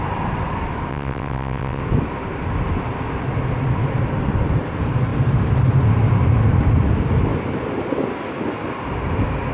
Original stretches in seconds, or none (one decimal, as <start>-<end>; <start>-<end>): 0.0-0.9; 1.8-9.5